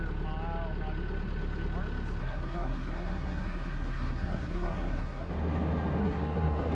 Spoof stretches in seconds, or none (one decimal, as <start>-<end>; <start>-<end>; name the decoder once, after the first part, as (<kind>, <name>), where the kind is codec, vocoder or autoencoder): 2.2-5.3 (codec, SNAC); 6.0-6.7